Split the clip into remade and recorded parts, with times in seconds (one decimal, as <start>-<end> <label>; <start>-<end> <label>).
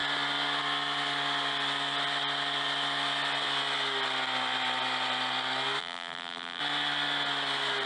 0.0-5.8 recorded; 5.8-6.6 remade; 6.6-7.9 recorded